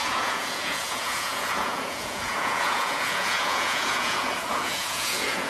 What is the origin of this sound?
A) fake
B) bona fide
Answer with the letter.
A